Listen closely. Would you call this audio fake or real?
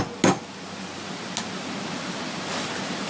real